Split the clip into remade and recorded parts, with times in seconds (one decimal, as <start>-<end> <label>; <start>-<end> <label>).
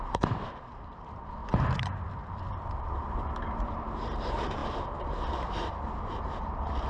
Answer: 0.0-1.4 remade; 1.4-2.4 recorded; 2.4-6.9 remade